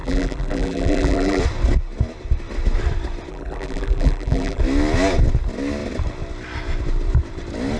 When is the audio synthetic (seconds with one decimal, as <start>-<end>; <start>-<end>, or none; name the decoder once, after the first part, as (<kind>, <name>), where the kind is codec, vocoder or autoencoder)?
0.0-1.4 (vocoder, BigVGAN v2); 3.3-4.6